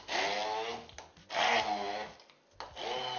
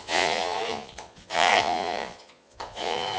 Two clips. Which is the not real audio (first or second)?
second